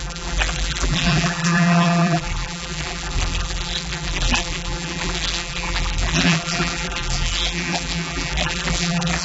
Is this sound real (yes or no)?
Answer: no